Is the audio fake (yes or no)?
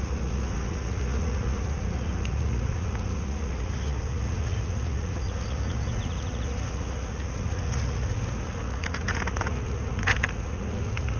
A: yes